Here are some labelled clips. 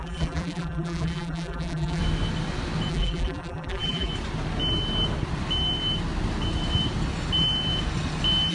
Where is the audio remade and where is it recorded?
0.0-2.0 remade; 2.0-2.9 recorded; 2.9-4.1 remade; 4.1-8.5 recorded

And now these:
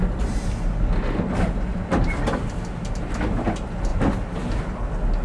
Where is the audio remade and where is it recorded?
0.0-3.1 remade; 3.1-5.2 recorded

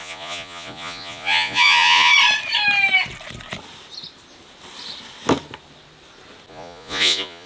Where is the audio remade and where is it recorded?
0.0-2.1 remade; 2.1-6.5 recorded; 6.5-7.5 remade

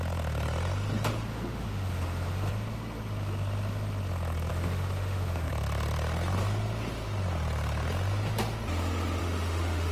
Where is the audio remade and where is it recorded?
0.0-1.3 recorded; 1.3-2.5 remade; 2.5-4.5 recorded; 4.5-5.5 remade; 5.5-9.2 recorded; 9.2-9.9 remade

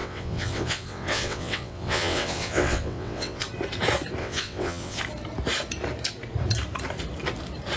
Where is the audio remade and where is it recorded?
0.0-3.4 remade; 3.4-4.2 recorded; 4.2-5.0 remade; 5.0-7.8 recorded

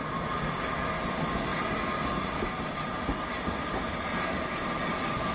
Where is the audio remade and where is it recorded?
0.0-5.3 recorded